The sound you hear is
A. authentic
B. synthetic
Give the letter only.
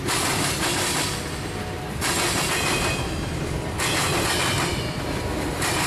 A